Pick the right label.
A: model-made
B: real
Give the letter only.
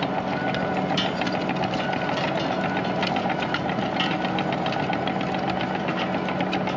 B